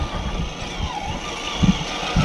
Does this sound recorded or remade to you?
recorded